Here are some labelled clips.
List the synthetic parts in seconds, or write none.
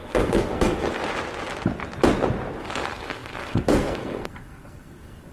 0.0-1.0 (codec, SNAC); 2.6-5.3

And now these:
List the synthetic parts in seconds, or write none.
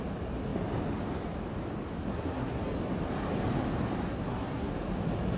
2.1-2.6 (codec, SNAC); 4.1-4.7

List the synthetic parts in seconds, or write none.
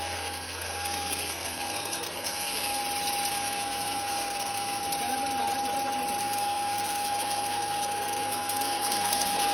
0.0-2.8 (codec, SNAC); 3.3-4.8; 6.2-9.5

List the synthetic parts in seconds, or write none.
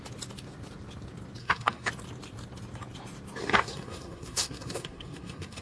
1.4-1.9 (codec, SNAC); 3.4-5.6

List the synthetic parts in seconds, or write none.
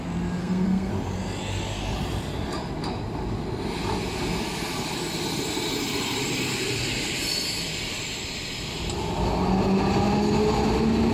0.4-0.9 (codec, SNAC)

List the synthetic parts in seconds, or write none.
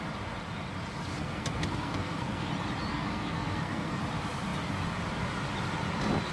1.2-2.5 (codec, SNAC); 2.9-4.0